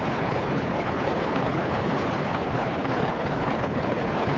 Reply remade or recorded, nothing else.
remade